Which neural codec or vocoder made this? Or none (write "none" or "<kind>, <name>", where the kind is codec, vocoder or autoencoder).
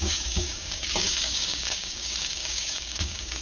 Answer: codec, DAC